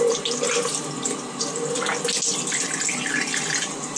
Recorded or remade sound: recorded